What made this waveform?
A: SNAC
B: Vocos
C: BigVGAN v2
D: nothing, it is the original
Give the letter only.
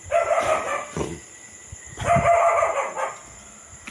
D